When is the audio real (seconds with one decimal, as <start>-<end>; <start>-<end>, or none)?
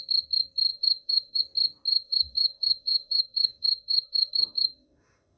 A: 0.0-0.7; 1.4-1.9